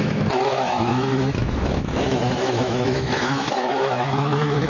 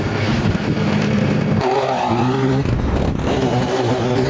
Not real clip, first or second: first